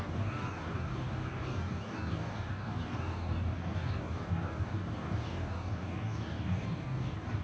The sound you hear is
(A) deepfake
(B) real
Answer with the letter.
A